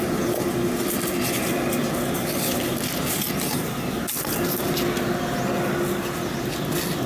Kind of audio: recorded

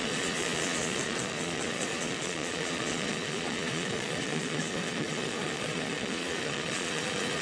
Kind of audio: remade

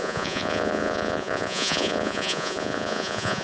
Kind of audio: remade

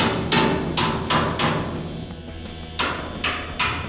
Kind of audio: recorded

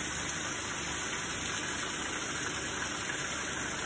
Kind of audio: recorded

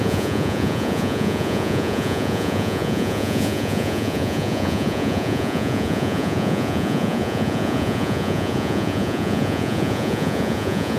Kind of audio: remade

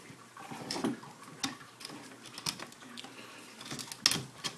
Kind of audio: recorded